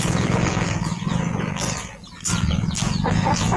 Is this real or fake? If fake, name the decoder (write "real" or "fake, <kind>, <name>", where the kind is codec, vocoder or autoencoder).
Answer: fake, vocoder, BigVGAN v2